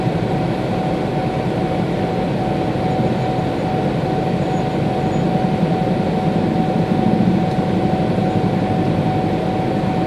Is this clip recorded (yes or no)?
yes